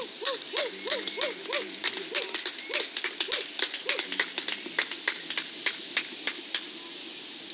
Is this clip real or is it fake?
real